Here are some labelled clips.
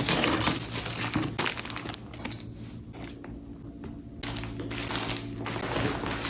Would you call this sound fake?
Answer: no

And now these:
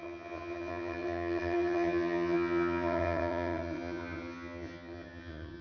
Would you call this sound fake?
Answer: yes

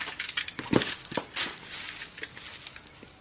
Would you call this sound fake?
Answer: no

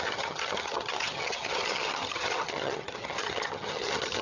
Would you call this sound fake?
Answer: yes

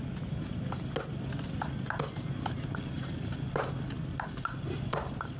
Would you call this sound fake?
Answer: no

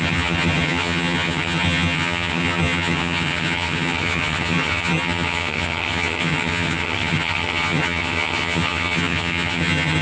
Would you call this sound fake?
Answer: yes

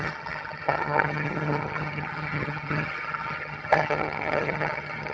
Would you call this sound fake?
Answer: yes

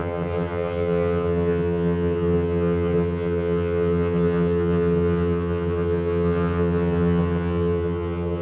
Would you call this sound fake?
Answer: yes